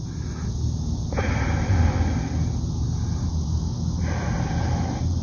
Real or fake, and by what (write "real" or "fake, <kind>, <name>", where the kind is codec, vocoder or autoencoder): real